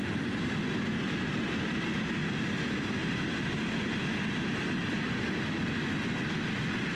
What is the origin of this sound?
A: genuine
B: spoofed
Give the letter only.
A